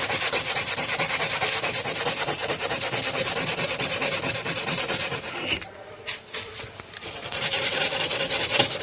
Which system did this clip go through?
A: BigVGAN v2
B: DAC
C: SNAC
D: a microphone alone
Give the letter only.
A